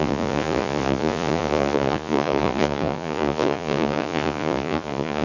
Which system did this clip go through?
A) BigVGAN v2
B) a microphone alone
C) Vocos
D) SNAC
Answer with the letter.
C